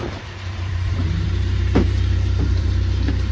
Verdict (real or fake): fake